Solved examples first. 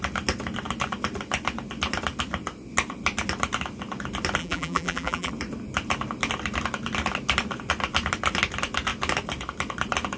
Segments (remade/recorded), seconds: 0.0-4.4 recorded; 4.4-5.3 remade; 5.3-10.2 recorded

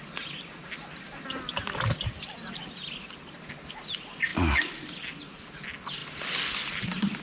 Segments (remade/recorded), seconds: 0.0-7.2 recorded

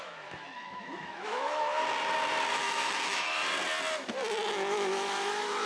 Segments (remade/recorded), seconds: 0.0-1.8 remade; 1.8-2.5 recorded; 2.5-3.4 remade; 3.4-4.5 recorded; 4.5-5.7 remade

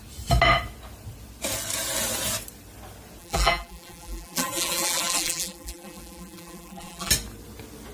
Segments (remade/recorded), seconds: 0.0-3.2 recorded; 3.2-7.1 remade; 7.1-7.9 recorded

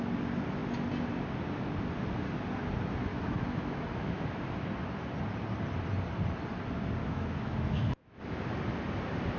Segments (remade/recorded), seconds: 0.0-3.1 recorded; 3.1-4.4 remade; 4.4-7.0 recorded; 7.0-8.2 remade; 8.2-9.4 recorded

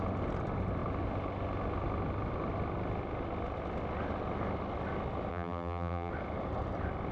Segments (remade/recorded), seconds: 0.0-5.3 recorded; 5.3-6.1 remade; 6.1-7.1 recorded

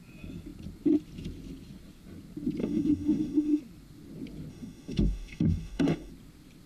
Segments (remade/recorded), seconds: 0.0-2.6 recorded; 2.6-3.6 remade; 3.6-4.5 recorded; 4.5-6.1 remade; 6.1-6.7 recorded